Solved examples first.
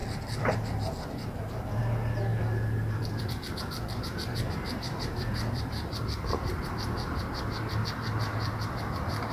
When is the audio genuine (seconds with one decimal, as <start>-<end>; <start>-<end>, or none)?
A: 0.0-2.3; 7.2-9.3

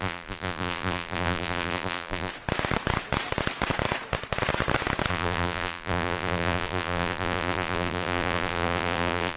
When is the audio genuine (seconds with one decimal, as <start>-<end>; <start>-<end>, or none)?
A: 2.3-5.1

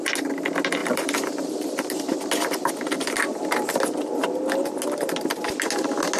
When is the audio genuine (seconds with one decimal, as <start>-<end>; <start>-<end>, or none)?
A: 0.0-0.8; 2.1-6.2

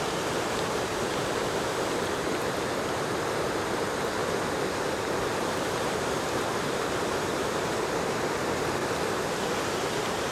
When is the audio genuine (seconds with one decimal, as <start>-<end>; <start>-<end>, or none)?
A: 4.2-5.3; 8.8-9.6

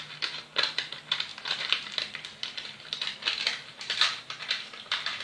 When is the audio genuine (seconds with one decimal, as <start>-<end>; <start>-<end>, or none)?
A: 0.0-1.3; 1.9-3.5; 4.7-5.2